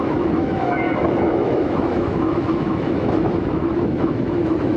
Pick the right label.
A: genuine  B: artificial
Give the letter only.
B